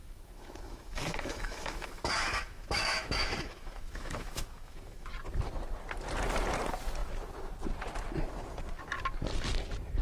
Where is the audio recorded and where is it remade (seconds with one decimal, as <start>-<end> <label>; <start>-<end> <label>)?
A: 0.0-5.1 remade; 5.1-10.0 recorded